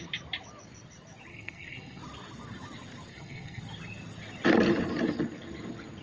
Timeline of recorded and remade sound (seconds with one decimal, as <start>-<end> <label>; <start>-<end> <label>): 0.0-1.3 recorded; 1.3-2.0 remade; 2.0-3.1 recorded; 3.1-3.6 remade; 3.6-6.0 recorded